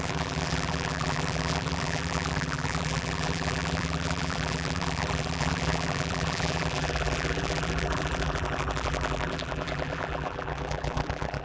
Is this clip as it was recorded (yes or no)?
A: no